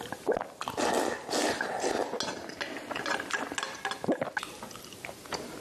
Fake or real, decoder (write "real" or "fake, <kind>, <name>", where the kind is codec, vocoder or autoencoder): real